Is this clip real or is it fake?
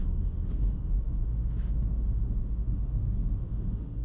fake